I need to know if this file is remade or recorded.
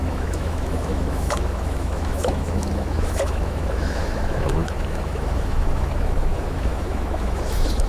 remade